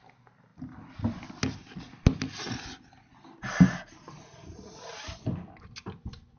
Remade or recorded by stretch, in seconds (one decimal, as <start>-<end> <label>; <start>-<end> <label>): 0.0-6.4 recorded